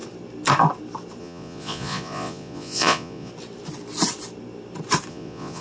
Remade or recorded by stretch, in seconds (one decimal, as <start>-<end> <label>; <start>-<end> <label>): 0.0-1.2 recorded; 1.2-3.3 remade; 3.3-5.1 recorded; 5.1-5.6 remade